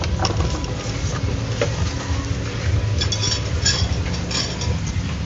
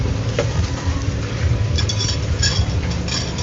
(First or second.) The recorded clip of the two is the first